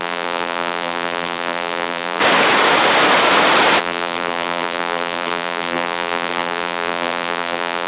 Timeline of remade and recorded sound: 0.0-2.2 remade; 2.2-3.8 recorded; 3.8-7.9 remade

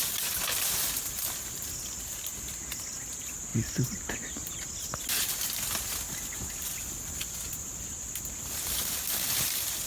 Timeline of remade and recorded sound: 0.0-9.9 recorded

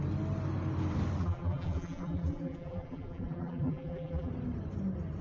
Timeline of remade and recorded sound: 0.0-1.2 recorded; 1.2-4.3 remade; 4.3-5.2 recorded

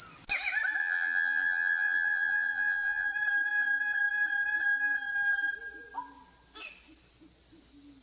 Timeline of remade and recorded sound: 0.0-0.8 recorded; 0.8-3.1 remade; 3.1-8.0 recorded

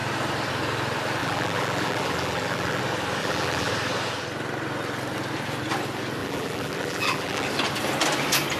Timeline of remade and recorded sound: 0.0-1.2 recorded; 1.2-2.8 remade; 2.8-3.2 recorded; 3.2-3.7 remade; 3.7-6.2 recorded; 6.2-7.5 remade; 7.5-8.6 recorded

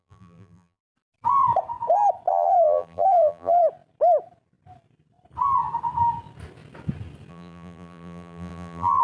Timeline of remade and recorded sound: 0.0-0.8 remade; 0.8-2.3 recorded; 2.3-3.6 remade; 3.6-7.3 recorded; 7.3-9.0 remade